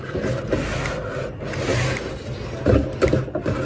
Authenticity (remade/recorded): recorded